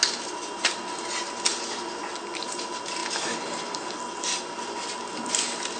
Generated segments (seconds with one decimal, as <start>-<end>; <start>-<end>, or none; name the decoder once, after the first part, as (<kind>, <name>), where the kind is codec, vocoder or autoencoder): none